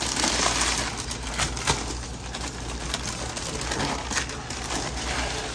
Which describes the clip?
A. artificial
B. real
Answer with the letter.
B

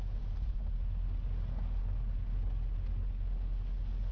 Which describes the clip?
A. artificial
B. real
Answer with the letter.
B